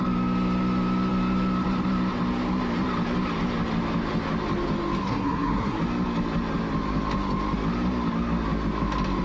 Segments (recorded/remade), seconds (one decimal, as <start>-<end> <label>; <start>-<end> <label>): 0.0-5.0 recorded; 5.0-5.8 remade; 5.8-9.2 recorded